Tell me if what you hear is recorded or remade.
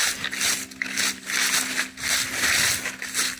recorded